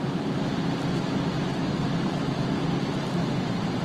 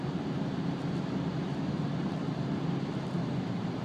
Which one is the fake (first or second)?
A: second